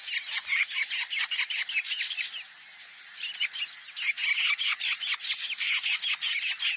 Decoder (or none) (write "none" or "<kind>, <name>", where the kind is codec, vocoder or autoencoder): none